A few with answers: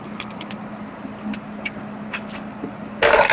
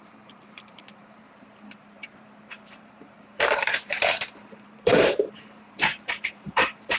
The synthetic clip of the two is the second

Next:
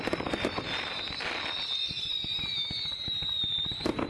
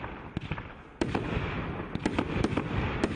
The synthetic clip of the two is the first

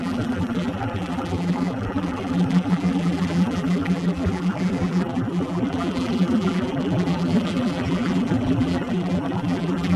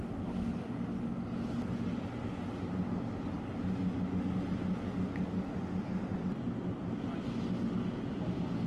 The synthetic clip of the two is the first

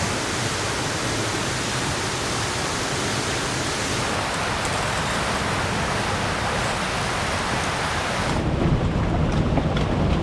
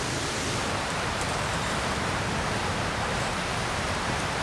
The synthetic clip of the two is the second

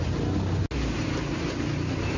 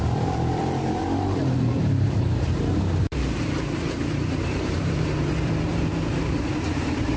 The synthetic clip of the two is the second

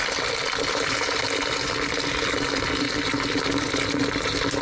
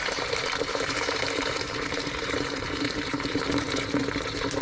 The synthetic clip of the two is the second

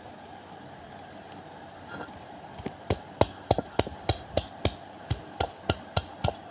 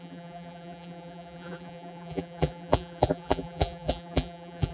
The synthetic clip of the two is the second